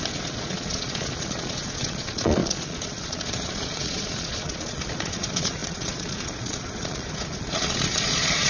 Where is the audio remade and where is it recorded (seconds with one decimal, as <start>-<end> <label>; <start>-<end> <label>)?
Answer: 0.0-8.5 remade